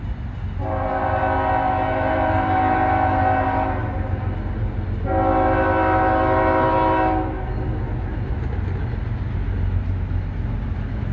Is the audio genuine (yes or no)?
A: yes